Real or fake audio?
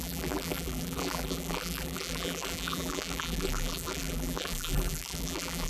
fake